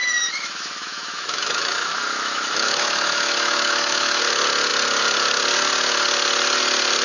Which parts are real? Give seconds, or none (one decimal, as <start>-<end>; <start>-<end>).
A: 4.2-7.0